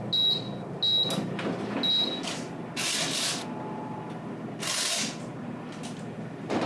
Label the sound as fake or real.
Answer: real